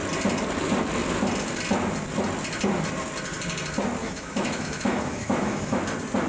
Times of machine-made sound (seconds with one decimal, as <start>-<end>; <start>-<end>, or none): 4.0-5.8